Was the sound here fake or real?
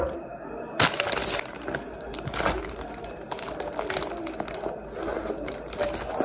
real